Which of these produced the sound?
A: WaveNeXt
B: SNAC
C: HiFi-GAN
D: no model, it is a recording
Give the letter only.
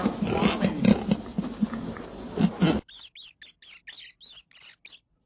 D